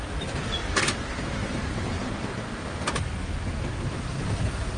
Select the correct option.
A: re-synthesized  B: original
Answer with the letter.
B